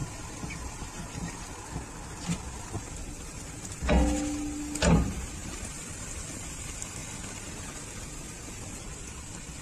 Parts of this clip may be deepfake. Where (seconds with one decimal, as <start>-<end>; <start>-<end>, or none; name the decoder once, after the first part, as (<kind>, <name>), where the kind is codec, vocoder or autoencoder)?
none